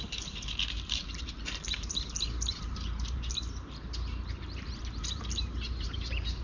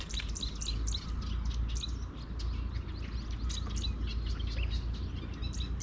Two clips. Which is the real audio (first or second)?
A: second